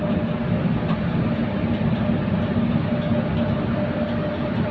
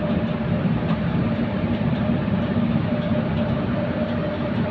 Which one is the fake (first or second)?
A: second